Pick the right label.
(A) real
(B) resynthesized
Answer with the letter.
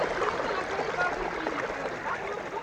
A